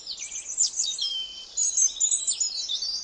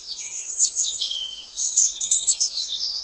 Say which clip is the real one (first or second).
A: first